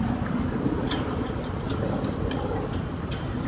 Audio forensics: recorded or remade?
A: recorded